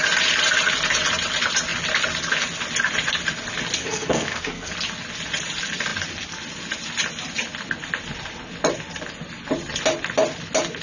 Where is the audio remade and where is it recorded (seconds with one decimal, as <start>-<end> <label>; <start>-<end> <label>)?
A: 0.0-3.8 recorded; 3.8-4.7 remade; 4.7-10.8 recorded